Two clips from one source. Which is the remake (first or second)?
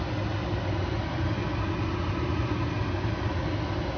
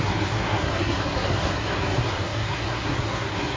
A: second